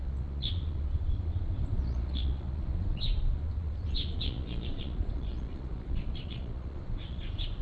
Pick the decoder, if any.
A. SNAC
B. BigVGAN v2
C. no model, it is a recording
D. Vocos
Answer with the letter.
D